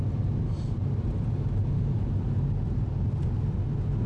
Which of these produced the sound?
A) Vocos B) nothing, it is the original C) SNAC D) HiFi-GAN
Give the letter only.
B